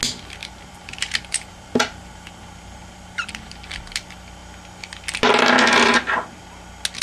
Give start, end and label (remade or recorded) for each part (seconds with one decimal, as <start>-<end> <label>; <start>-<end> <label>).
0.0-0.4 recorded; 0.4-3.3 remade; 3.3-7.0 recorded

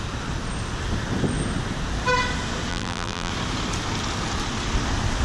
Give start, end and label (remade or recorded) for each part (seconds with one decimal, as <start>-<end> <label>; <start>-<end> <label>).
0.0-2.7 recorded; 2.7-3.3 remade; 3.3-5.2 recorded

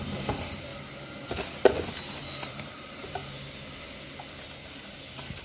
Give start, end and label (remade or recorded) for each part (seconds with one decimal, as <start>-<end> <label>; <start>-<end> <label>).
0.0-0.7 remade; 0.7-2.5 recorded; 2.5-3.2 remade; 3.2-4.5 recorded; 4.5-5.4 remade

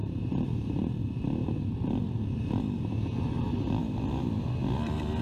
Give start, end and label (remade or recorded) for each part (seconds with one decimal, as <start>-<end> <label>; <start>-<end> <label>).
0.0-1.0 remade; 1.0-3.8 recorded; 3.8-4.5 remade; 4.5-5.2 recorded

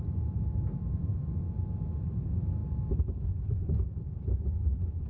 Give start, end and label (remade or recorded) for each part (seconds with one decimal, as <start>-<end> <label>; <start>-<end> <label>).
0.0-5.1 recorded